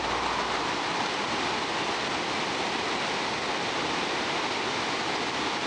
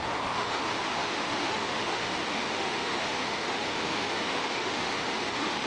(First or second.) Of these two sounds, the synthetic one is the second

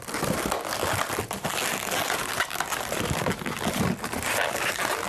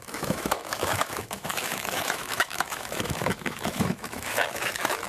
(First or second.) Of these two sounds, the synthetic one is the second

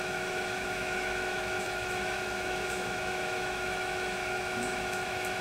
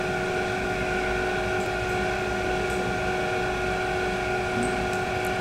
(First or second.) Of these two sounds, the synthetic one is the first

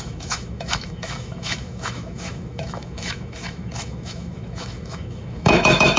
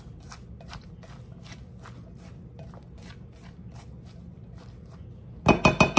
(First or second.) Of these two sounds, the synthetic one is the first